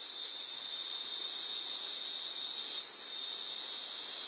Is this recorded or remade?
recorded